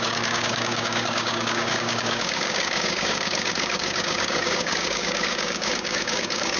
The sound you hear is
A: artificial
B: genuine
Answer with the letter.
A